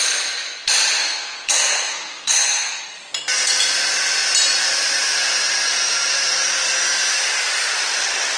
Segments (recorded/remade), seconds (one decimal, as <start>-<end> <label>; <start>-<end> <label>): 0.0-1.0 recorded; 1.0-2.8 remade; 2.8-8.4 recorded